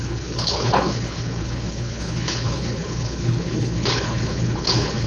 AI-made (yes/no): yes